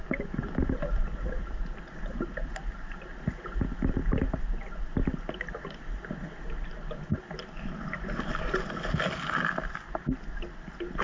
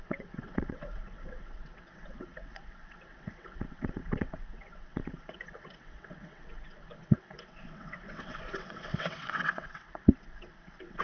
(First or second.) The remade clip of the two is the second